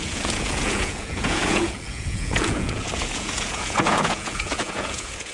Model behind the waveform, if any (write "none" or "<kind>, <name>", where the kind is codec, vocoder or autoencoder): vocoder, Vocos